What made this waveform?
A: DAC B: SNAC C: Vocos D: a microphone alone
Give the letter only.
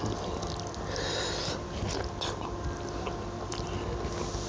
D